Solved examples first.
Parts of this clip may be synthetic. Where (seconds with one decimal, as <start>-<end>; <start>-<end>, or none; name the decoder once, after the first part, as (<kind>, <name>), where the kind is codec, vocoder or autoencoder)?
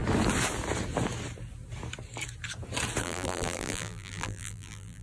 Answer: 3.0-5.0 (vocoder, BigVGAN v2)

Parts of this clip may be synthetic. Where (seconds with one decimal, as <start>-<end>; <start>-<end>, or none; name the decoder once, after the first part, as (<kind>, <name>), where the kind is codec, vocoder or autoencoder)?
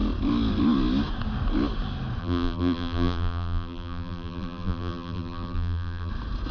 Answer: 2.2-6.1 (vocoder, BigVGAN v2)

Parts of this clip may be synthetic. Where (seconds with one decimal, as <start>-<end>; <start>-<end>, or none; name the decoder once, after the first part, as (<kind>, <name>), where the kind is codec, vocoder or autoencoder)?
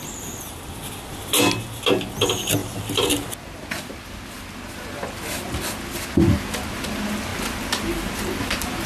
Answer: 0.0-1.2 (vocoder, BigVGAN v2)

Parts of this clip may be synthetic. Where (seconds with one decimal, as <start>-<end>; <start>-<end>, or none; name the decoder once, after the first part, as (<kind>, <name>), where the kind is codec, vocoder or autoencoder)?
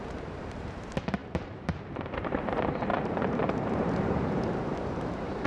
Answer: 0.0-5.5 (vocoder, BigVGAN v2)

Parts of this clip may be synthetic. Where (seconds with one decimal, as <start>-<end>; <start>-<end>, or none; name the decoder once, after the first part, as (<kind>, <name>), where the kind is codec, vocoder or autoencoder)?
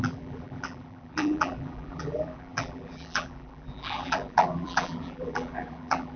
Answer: 0.0-6.2 (vocoder, BigVGAN v2)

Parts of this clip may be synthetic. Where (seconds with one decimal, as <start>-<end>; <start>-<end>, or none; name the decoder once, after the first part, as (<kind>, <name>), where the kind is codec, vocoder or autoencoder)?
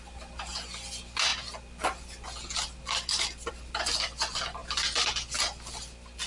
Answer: none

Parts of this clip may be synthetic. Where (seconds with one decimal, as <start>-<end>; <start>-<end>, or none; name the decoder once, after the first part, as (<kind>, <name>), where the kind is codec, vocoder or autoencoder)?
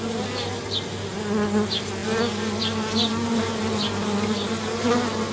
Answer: none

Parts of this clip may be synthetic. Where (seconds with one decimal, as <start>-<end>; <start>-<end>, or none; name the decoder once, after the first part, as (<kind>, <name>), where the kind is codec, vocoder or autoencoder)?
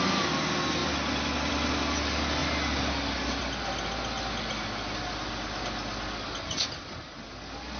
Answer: none